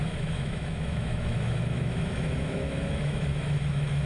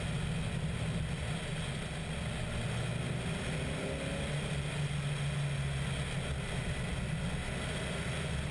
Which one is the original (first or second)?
second